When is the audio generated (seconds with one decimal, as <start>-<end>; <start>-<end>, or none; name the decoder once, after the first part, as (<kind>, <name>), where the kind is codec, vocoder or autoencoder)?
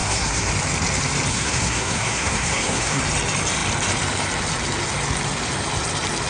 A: 0.0-0.5 (codec, SNAC); 1.3-3.0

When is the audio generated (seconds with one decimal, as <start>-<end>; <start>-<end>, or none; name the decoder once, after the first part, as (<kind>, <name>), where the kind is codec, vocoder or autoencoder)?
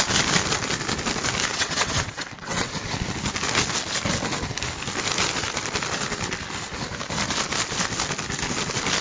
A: 1.5-2.7 (vocoder, WaveNeXt)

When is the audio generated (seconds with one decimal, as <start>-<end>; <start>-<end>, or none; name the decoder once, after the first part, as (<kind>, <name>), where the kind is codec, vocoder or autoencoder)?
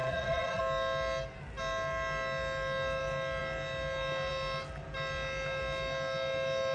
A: 0.0-0.6 (vocoder, Vocos)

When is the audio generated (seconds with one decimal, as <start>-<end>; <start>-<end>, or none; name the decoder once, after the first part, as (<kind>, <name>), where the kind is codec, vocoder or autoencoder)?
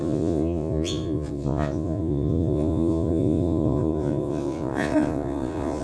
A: 0.0-5.8 (vocoder, Vocos)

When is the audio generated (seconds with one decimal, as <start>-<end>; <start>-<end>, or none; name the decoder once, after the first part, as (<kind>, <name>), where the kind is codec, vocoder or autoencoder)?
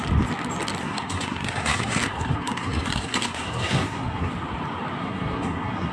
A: 0.8-4.3 (codec, SNAC); 5.0-5.9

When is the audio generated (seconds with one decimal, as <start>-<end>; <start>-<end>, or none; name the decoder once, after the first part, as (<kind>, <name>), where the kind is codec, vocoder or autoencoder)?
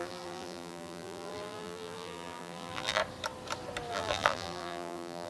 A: 0.0-3.0 (vocoder, BigVGAN v2); 3.9-5.3